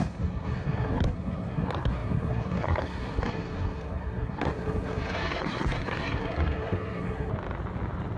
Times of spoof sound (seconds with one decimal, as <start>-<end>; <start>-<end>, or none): 0.0-7.3